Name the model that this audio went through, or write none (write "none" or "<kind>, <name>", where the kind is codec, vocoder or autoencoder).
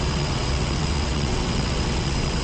vocoder, WaveNeXt